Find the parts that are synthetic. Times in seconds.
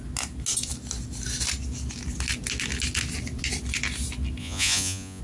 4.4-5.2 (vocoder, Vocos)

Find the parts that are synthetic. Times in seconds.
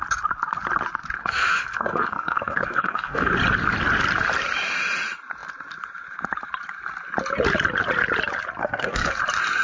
1.2-3.3 (codec, SNAC); 8.6-9.2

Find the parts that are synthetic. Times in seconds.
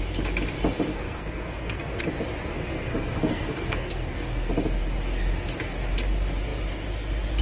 0.9-2.0 (codec, SNAC); 2.5-4.5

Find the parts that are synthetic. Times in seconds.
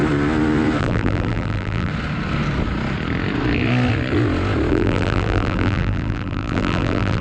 0.8-1.9 (vocoder, BigVGAN v2); 4.7-7.2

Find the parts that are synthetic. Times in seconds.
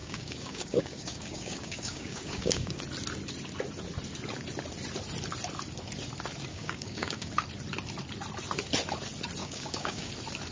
0.0-2.8 (codec, DAC); 6.5-7.3; 9.4-10.1